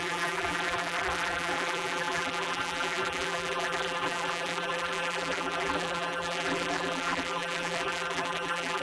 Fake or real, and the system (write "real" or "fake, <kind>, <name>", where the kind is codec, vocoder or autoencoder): fake, vocoder, BigVGAN v2